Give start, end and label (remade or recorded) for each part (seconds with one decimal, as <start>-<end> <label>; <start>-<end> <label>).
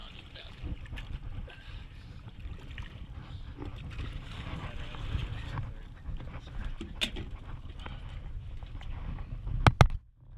0.0-2.4 remade; 2.4-10.4 recorded